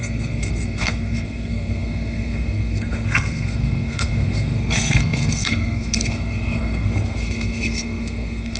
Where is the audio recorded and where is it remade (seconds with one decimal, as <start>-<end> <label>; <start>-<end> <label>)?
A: 0.0-8.6 remade